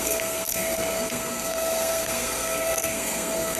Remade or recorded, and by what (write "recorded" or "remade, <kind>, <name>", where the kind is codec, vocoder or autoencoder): remade, codec, SNAC